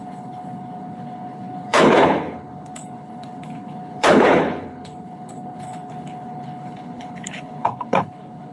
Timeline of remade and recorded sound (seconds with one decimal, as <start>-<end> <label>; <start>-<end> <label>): 0.0-8.5 remade